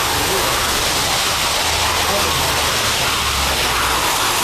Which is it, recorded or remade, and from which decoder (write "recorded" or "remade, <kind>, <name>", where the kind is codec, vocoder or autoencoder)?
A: recorded